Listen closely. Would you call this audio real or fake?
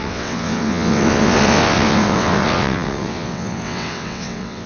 fake